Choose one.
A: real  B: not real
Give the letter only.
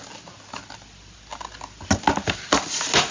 A